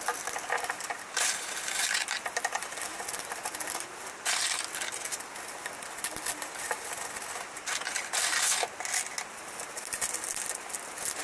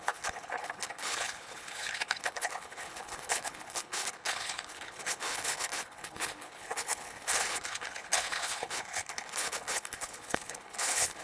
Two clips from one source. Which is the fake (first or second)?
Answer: second